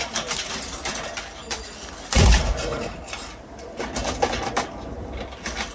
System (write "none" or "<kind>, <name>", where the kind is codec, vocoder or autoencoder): none